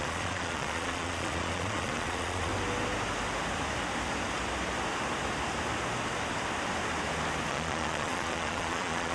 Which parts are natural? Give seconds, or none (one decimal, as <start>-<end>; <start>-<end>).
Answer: 2.5-7.5